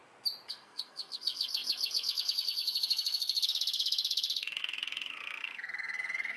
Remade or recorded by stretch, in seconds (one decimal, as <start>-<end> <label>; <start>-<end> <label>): 0.0-0.5 recorded; 0.5-6.4 remade